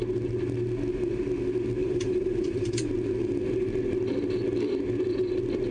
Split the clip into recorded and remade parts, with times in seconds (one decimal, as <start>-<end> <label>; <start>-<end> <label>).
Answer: 0.0-1.8 recorded; 1.8-2.9 remade; 2.9-5.7 recorded